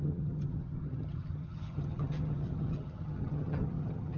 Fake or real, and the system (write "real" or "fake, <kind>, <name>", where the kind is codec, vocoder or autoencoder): fake, vocoder, HiFi-GAN